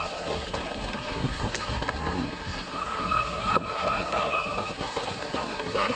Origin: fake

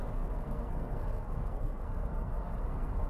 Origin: fake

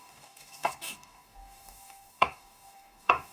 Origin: fake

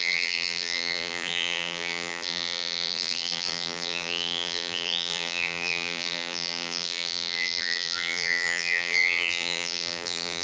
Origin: fake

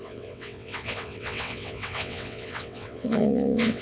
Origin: fake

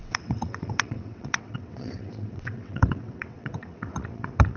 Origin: fake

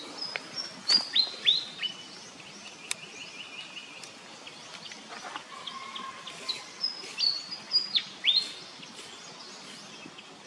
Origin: real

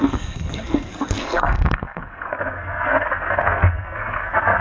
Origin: fake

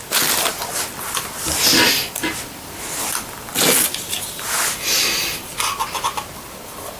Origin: real